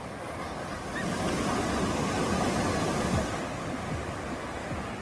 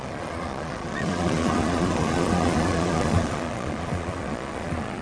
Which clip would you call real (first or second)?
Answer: first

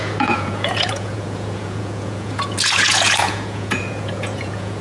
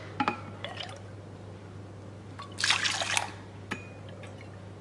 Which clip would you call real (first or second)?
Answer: second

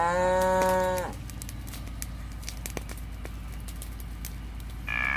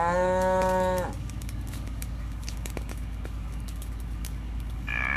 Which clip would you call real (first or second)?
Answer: first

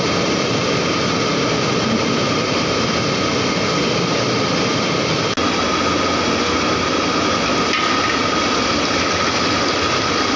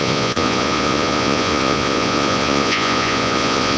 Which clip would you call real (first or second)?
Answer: first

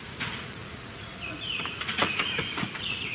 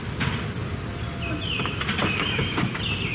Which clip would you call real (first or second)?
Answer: second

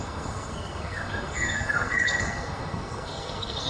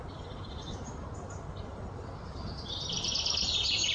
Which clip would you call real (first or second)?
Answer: second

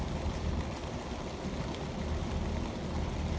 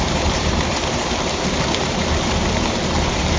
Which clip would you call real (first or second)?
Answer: first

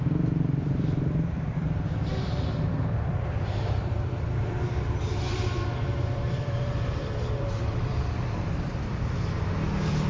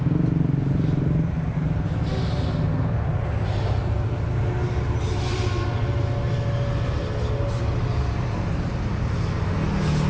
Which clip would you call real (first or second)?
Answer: second